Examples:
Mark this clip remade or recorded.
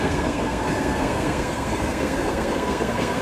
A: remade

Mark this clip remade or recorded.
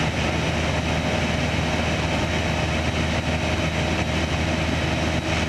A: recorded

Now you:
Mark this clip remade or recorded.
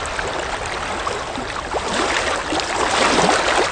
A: recorded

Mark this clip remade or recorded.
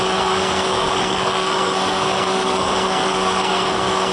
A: remade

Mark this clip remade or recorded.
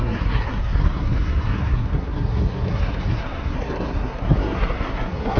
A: remade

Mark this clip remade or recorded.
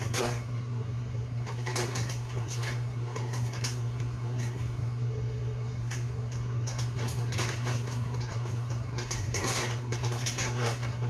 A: remade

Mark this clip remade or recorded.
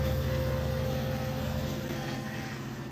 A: remade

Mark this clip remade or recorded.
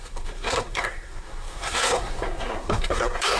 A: remade